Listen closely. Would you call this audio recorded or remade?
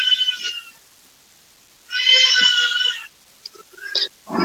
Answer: recorded